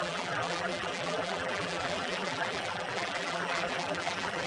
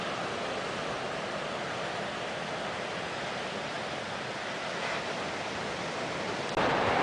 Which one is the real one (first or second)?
second